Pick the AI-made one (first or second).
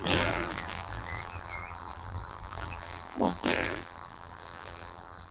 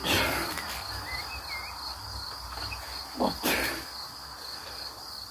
first